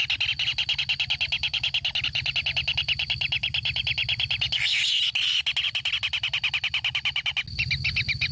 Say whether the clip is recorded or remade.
recorded